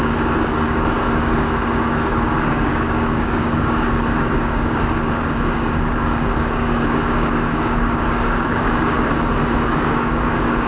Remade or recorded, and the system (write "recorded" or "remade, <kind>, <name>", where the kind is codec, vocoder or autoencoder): remade, codec, DAC